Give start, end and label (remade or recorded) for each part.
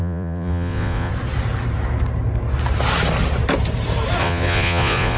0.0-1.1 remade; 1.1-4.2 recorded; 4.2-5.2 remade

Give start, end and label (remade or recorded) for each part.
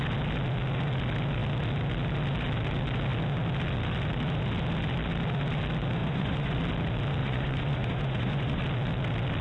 0.0-6.0 recorded; 6.0-6.6 remade; 6.6-7.2 recorded; 7.2-8.6 remade; 8.6-9.4 recorded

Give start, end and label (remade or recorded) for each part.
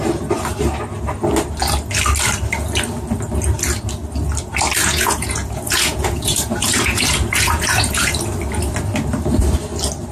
0.0-4.8 recorded; 4.8-8.1 remade; 8.1-10.1 recorded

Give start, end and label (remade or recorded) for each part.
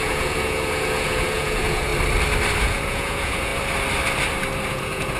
0.0-1.9 remade; 1.9-2.6 recorded; 2.6-3.5 remade; 3.5-4.7 recorded; 4.7-5.2 remade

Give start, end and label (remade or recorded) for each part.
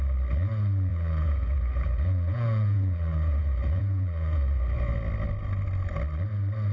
0.0-0.9 recorded; 0.9-4.9 remade; 4.9-6.7 recorded